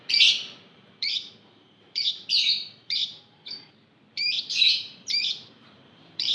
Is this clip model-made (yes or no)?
yes